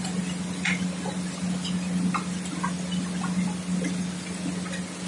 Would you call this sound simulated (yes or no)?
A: no